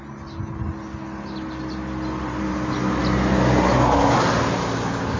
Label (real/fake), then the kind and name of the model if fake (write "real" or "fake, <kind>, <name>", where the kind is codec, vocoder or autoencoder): real